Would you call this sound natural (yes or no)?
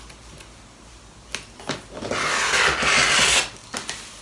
yes